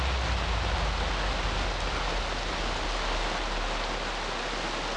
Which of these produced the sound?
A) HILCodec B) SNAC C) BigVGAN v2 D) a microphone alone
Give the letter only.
D